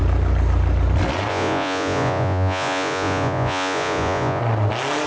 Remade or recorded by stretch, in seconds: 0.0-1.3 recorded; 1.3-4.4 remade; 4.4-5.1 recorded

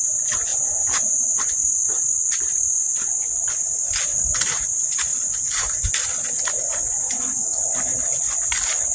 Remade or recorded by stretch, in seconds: 0.0-0.5 recorded; 0.5-1.2 remade; 1.2-8.9 recorded

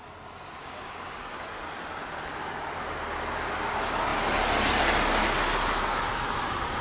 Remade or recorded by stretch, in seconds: 0.0-0.6 recorded; 0.6-1.5 remade; 1.5-6.8 recorded

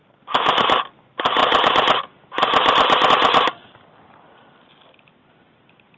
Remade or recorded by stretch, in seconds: 0.0-6.0 recorded